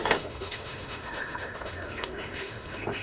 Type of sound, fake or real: fake